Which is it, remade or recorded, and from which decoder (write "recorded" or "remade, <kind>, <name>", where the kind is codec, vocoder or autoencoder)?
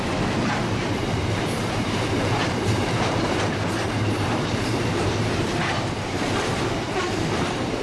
remade, vocoder, BigVGAN v2